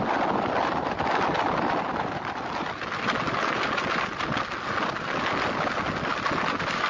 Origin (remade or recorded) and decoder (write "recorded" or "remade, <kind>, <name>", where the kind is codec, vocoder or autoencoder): recorded